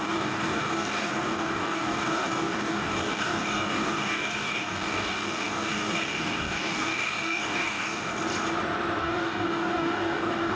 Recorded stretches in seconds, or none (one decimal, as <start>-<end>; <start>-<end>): 8.1-9.0